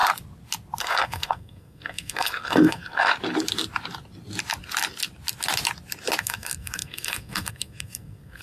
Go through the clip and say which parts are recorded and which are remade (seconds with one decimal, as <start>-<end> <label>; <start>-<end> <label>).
0.0-0.8 recorded; 0.8-3.1 remade; 3.1-6.2 recorded; 6.2-8.4 remade

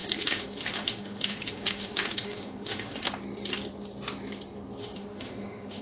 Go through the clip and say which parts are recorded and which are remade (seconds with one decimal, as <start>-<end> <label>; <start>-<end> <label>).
0.0-3.1 remade; 3.1-4.8 recorded; 4.8-5.8 remade

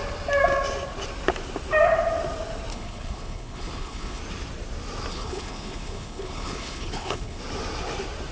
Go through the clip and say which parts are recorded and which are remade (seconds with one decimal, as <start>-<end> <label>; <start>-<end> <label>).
0.0-2.7 recorded; 2.7-4.2 remade; 4.2-5.1 recorded; 5.1-7.4 remade; 7.4-8.3 recorded